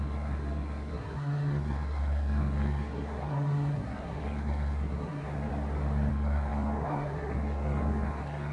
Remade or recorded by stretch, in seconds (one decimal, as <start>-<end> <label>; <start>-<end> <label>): 0.0-5.5 remade; 5.5-6.1 recorded; 6.1-8.5 remade

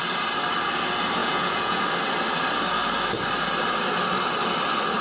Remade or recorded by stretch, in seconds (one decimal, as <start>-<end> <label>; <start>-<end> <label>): 0.0-1.2 recorded; 1.2-1.8 remade; 1.8-5.0 recorded

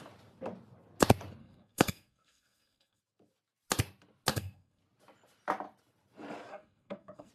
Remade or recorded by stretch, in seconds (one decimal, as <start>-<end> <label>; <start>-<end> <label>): 0.0-1.4 recorded; 1.4-3.0 remade; 3.0-4.3 recorded; 4.3-4.8 remade; 4.8-6.5 recorded; 6.5-7.3 remade

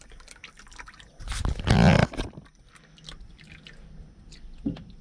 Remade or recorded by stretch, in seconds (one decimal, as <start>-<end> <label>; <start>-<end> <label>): 0.0-5.0 recorded